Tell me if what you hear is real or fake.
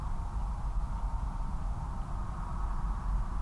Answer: real